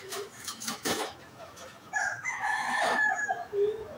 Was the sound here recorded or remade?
remade